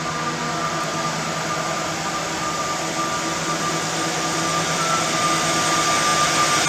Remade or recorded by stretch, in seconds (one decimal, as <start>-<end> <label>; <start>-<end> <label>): 0.0-6.7 recorded